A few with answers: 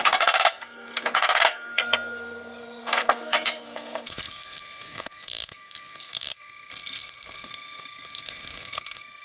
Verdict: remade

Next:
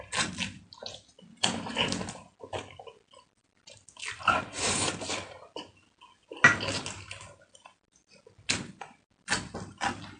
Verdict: recorded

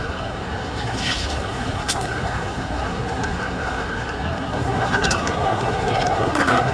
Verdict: remade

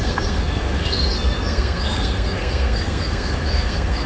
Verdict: remade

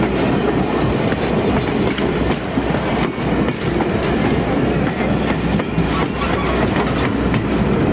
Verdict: recorded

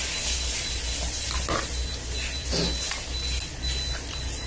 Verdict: recorded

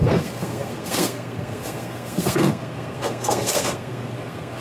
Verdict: remade